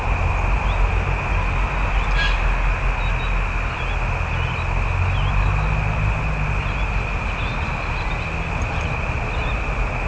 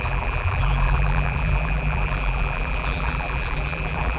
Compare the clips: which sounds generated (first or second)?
second